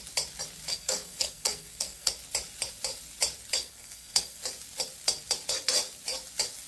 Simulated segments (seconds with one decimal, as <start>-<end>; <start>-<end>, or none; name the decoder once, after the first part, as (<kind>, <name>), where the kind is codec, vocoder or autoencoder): 0.7-2.1 (codec, SNAC); 3.6-4.4